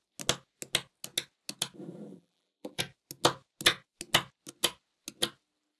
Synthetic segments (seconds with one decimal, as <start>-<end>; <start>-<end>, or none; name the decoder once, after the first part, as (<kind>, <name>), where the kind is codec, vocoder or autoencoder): 2.1-2.8 (vocoder, BigVGAN v2)